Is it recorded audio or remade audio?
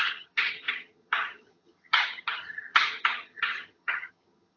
remade